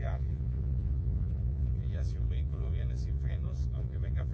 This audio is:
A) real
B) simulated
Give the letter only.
B